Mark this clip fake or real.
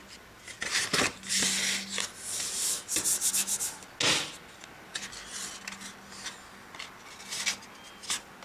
real